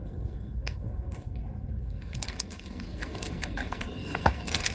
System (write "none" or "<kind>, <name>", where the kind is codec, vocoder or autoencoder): codec, SNAC